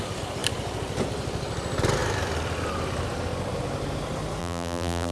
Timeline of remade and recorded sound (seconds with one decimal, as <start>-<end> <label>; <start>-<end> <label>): 0.0-4.4 recorded; 4.4-5.1 remade